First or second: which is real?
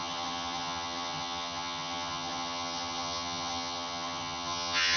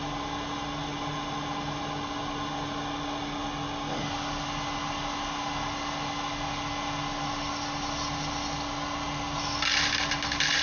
second